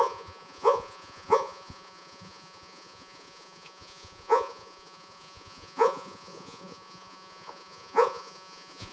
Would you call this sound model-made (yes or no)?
yes